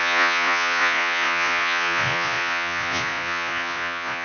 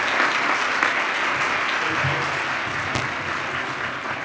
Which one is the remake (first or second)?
first